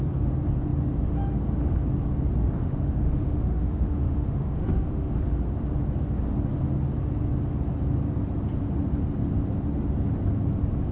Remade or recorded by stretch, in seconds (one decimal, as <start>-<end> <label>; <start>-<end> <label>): 0.0-2.6 recorded; 2.6-5.1 remade; 5.1-10.9 recorded